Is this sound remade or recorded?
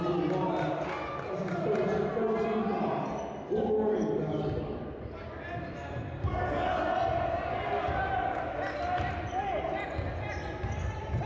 recorded